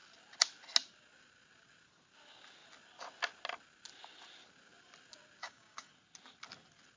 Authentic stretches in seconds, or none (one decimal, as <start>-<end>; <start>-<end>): 0.0-5.4; 5.9-7.0